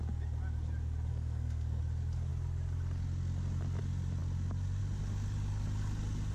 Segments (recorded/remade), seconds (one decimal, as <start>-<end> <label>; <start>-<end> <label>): 0.0-1.1 recorded; 1.1-1.8 remade; 1.8-6.3 recorded